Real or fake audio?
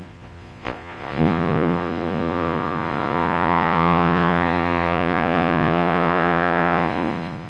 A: fake